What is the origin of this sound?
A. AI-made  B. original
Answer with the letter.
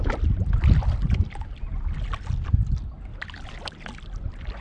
B